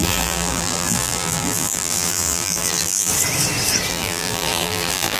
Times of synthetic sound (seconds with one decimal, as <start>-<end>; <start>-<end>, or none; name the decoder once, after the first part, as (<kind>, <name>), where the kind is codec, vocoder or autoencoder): 0.0-3.1 (vocoder, BigVGAN v2); 3.9-5.2